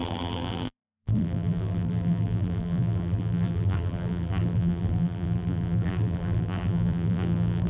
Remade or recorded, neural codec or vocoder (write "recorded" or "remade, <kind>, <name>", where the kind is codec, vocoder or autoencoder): remade, vocoder, BigVGAN v2